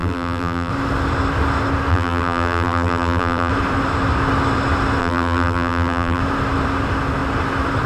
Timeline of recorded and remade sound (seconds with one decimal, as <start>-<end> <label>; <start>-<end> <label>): 0.0-0.7 remade; 0.7-1.9 recorded; 1.9-3.5 remade; 3.5-5.0 recorded; 5.0-6.2 remade; 6.2-7.9 recorded